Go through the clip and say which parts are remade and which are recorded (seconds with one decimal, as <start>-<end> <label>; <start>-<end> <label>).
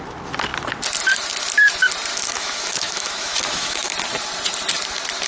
0.0-2.1 recorded; 2.1-3.9 remade; 3.9-5.3 recorded